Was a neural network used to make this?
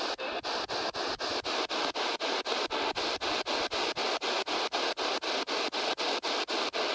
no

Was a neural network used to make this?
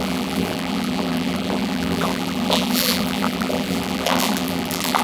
yes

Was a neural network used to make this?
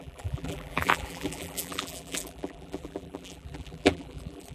yes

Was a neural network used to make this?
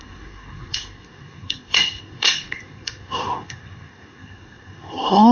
yes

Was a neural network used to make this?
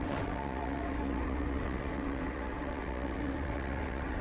yes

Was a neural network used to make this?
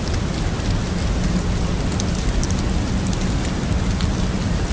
no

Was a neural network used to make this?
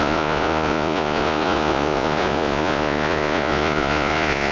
yes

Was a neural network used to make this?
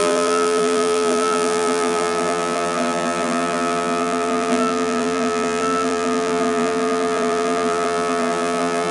yes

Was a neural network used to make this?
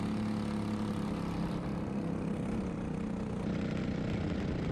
no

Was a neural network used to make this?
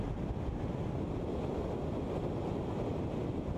no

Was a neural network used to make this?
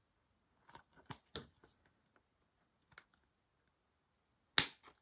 no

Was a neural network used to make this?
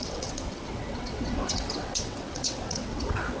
yes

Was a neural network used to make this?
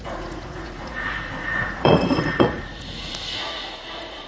yes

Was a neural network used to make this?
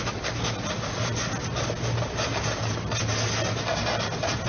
no